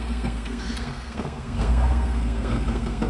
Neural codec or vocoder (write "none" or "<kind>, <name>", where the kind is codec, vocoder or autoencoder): codec, SNAC